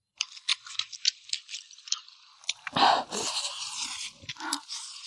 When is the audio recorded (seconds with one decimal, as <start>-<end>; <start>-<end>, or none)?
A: 0.0-5.1